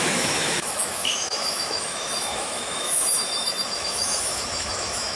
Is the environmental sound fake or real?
fake